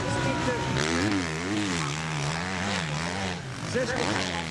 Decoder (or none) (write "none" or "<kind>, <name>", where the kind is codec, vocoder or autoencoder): none